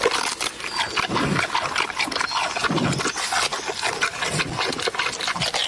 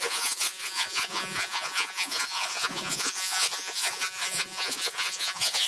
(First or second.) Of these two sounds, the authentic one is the first